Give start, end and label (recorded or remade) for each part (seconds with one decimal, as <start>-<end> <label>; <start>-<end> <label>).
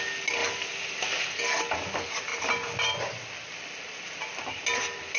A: 0.0-5.2 recorded